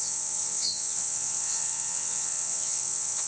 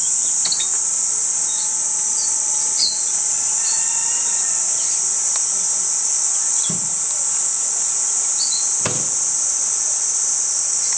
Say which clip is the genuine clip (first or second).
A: second